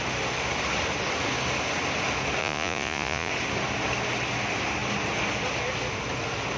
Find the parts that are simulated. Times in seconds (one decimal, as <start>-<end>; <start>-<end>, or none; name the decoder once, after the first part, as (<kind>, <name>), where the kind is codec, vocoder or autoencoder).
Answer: 2.4-3.3 (vocoder, Vocos)